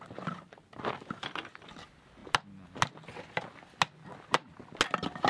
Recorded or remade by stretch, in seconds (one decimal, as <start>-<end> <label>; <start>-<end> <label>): 0.0-5.3 recorded

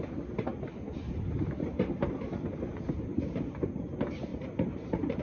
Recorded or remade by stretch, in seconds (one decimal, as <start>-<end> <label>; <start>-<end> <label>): 0.0-3.1 recorded; 3.1-3.7 remade; 3.7-4.3 recorded; 4.3-5.2 remade

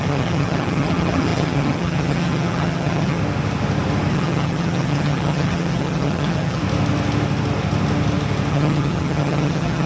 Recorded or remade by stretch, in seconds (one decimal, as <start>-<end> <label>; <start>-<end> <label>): 0.0-3.2 remade; 3.2-4.1 recorded; 4.1-6.6 remade; 6.6-8.5 recorded; 8.5-9.9 remade

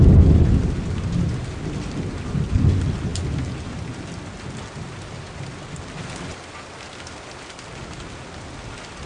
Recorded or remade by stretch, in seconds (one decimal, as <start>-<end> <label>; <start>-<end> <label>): 0.0-9.1 recorded

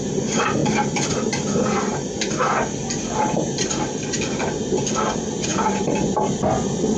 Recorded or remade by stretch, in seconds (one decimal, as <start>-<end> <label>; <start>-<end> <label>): 0.0-0.6 remade; 0.6-4.8 recorded; 4.8-7.0 remade

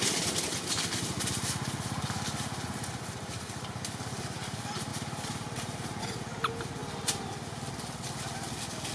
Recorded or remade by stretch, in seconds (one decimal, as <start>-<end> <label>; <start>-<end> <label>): 0.0-4.9 recorded; 4.9-6.0 remade; 6.0-8.9 recorded